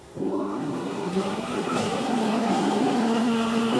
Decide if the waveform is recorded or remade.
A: remade